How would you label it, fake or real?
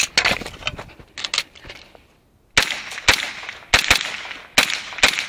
real